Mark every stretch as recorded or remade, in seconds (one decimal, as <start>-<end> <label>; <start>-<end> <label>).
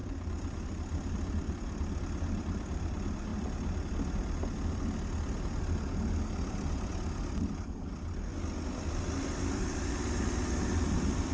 0.0-11.3 recorded